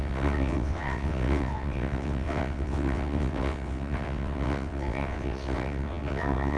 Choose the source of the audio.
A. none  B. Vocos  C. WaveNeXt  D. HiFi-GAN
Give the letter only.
C